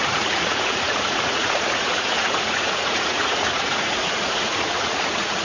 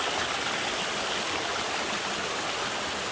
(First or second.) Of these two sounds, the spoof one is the first